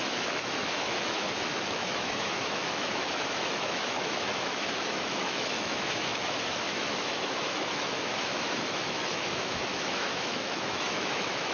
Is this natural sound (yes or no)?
no